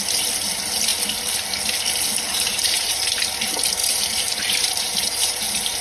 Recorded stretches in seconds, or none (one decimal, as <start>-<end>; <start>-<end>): 0.0-2.3; 3.1-3.8